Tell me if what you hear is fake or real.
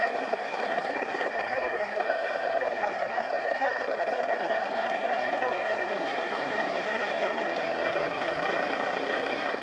fake